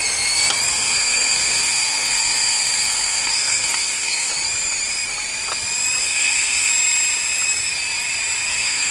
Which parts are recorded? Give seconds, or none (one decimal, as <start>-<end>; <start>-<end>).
0.0-0.7; 4.3-6.0; 6.7-8.5